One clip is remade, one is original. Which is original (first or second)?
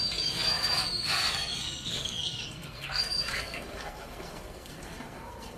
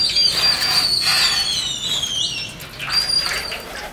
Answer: second